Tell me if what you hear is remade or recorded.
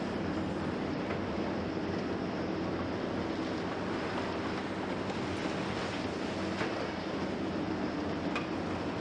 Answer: recorded